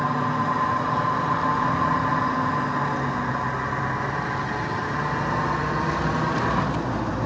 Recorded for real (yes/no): yes